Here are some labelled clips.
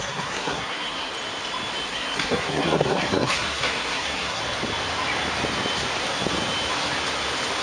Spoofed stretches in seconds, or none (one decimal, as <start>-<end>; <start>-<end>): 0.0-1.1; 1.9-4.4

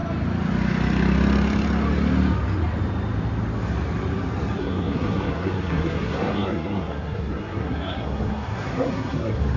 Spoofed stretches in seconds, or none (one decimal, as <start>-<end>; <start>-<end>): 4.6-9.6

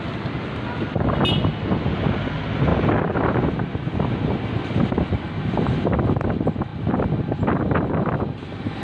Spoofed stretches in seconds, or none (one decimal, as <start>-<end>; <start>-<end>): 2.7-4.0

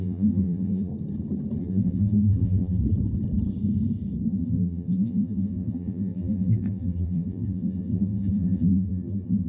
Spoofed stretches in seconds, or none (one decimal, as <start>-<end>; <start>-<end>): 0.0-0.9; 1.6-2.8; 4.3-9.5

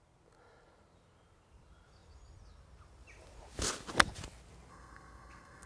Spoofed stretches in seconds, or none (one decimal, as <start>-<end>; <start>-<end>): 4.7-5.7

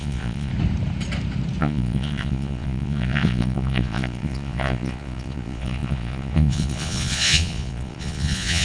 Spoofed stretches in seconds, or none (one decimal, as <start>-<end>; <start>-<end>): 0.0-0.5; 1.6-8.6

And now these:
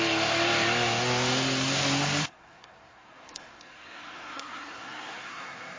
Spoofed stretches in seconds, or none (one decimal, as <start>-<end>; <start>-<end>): 2.2-5.8